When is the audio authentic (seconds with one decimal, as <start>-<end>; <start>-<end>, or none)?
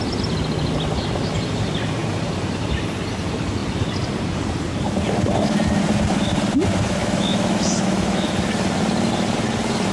0.0-7.0; 8.3-9.9